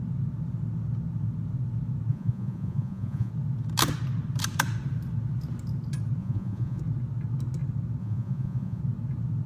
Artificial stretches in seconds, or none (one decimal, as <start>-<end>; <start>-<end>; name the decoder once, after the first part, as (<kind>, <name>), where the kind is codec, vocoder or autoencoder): 2.1-3.3 (vocoder, Vocos); 6.2-6.8; 8.0-8.8